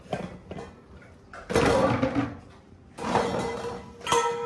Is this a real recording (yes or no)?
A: yes